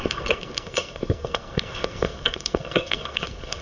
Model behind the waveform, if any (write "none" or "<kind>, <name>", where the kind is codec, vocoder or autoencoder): codec, SNAC